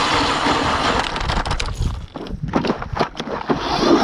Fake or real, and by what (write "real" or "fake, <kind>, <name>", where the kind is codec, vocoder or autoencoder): real